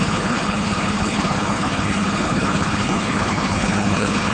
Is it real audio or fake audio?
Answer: fake